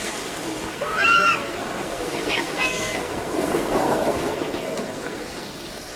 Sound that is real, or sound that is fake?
fake